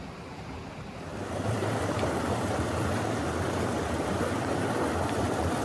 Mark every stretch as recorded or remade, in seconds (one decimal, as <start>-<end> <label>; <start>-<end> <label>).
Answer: 0.0-5.6 recorded